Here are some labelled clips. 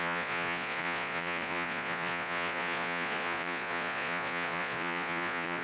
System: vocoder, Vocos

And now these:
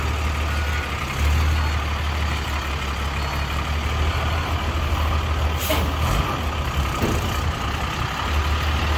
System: none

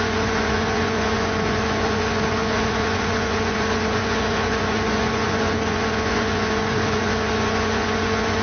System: vocoder, Vocos